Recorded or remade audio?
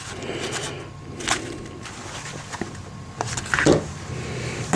recorded